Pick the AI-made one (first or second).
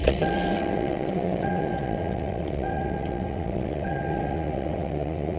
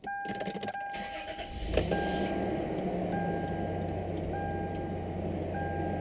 first